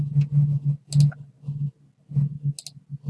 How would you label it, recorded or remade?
recorded